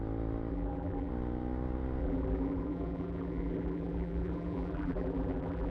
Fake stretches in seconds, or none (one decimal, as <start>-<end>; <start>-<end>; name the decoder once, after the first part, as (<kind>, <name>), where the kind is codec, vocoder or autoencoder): 0.5-1.1 (vocoder, BigVGAN v2); 2.0-5.7